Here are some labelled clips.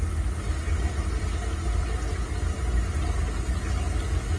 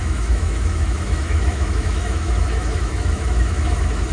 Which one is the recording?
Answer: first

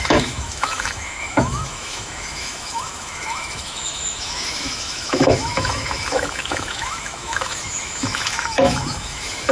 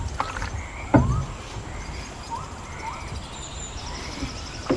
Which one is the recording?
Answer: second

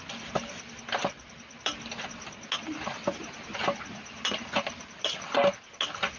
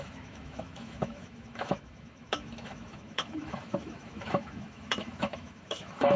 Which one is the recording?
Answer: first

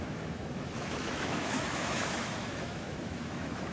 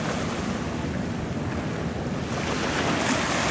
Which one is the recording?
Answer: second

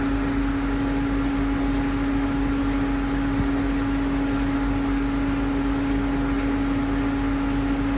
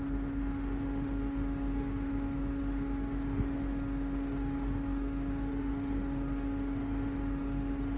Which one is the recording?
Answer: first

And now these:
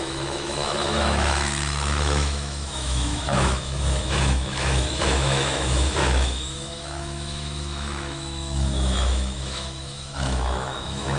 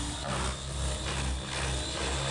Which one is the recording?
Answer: second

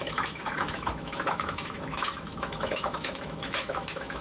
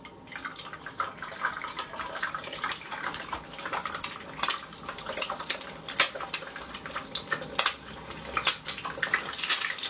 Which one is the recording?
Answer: second